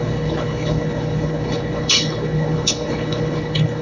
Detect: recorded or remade remade